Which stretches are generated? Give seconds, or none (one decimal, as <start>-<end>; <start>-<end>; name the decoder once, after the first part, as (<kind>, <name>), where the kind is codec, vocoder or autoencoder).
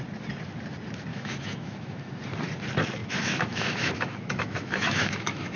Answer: 1.1-2.2 (autoencoder, DAC-VAE); 3.0-5.6